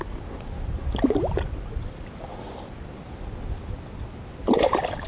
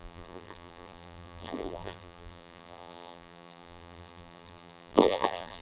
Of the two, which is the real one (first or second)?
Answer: first